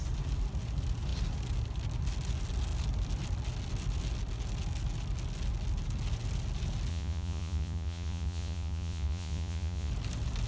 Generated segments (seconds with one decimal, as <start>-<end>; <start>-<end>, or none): 6.9-9.9